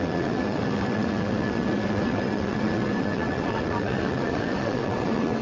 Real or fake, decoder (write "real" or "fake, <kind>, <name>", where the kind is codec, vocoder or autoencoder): fake, vocoder, WaveNeXt